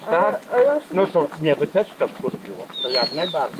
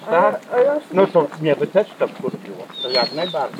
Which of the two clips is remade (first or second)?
first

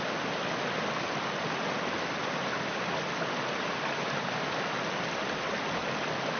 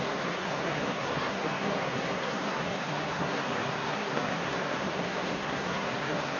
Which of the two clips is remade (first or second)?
second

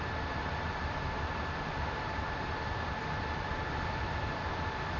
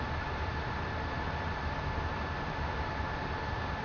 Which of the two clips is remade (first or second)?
first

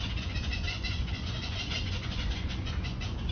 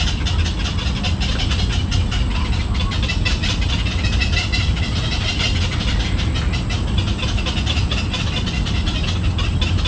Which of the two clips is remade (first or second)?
first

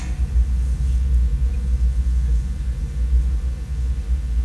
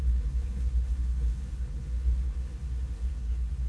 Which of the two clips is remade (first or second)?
second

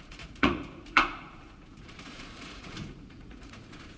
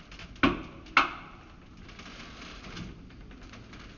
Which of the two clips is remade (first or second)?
first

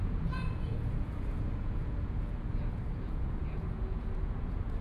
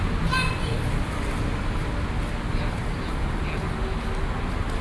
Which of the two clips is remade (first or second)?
first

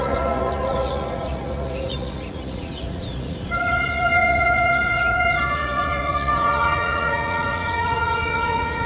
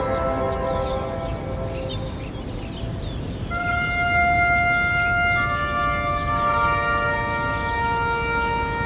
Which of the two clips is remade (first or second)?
first